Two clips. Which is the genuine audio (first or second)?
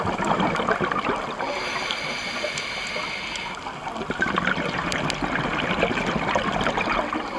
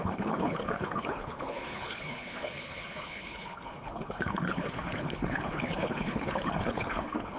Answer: first